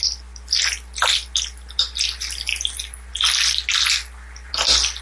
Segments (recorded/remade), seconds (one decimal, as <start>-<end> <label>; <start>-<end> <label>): 0.0-5.0 recorded